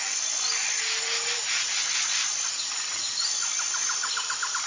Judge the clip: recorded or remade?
remade